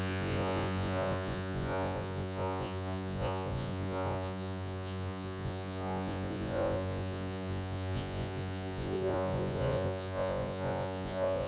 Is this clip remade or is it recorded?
remade